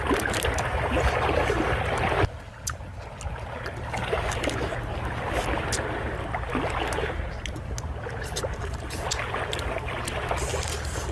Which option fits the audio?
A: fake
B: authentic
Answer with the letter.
B